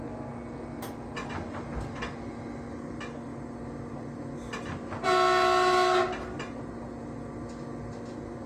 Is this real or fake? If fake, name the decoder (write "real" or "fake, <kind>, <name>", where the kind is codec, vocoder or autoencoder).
real